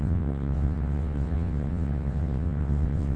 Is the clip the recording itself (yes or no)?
no